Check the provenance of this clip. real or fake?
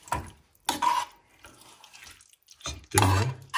real